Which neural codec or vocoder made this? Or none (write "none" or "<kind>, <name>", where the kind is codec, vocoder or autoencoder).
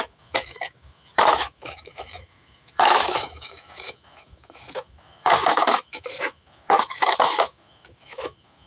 autoencoder, DAC-VAE